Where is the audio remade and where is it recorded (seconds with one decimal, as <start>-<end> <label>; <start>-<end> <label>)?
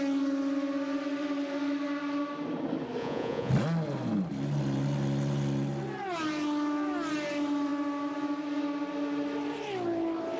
0.0-3.0 recorded; 3.0-3.5 remade; 3.5-10.4 recorded